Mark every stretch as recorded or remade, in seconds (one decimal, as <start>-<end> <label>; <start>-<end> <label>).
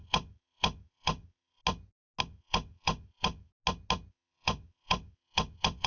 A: 0.0-1.6 remade; 1.6-2.2 recorded; 2.2-3.5 remade; 3.5-4.1 recorded; 4.1-5.9 remade